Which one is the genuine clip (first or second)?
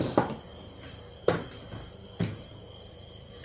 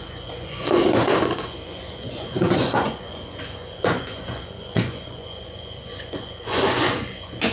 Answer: first